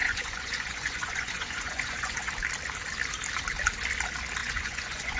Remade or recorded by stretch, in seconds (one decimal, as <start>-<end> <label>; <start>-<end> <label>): 0.0-2.3 remade; 2.3-4.4 recorded; 4.4-5.2 remade